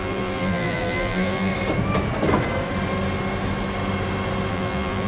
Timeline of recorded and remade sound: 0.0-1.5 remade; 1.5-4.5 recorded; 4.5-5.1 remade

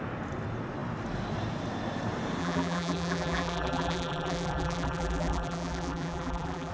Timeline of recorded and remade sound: 0.0-2.4 recorded; 2.4-6.7 remade